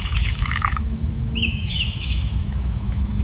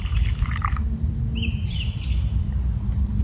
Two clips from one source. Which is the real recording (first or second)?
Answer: second